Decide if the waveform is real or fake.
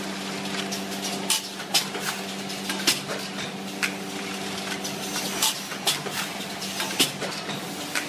real